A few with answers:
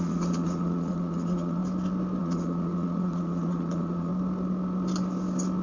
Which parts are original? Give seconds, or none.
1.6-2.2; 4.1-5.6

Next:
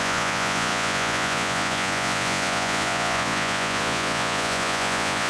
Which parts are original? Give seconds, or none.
none